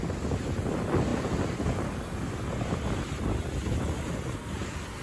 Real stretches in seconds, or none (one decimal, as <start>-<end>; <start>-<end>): 0.0-5.0

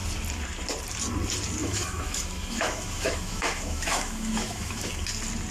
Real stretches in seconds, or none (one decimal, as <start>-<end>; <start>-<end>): 0.0-1.6; 4.9-5.5

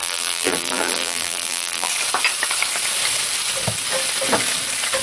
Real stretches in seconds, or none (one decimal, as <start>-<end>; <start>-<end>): 1.9-5.0

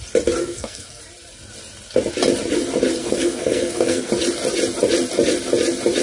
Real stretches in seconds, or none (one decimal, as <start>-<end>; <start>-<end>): 0.0-0.4; 1.0-3.0; 4.1-6.0

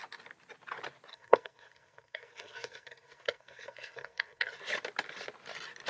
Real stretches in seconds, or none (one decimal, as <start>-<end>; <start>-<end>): 0.0-1.1; 4.6-5.9